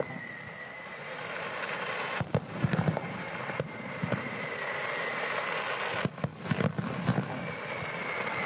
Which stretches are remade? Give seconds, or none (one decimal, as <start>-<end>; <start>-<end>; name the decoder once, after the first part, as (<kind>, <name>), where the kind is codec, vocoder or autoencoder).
0.9-5.4 (vocoder, BigVGAN v2)